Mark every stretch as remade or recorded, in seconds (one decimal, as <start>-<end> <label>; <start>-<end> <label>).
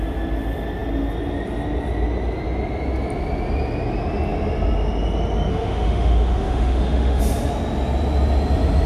0.0-5.5 recorded; 5.5-7.2 remade; 7.2-8.9 recorded